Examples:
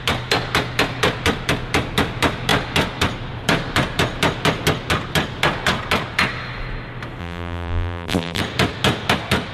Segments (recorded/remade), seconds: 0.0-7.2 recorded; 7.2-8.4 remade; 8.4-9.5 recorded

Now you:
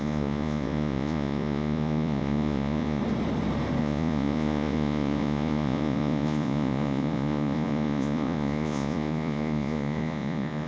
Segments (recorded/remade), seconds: 0.0-3.0 remade; 3.0-3.8 recorded; 3.8-10.7 remade

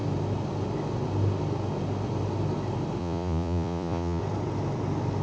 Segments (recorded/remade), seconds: 0.0-3.0 recorded; 3.0-4.2 remade; 4.2-5.2 recorded

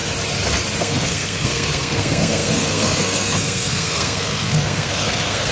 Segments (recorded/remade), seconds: 0.0-0.8 recorded; 0.8-5.5 remade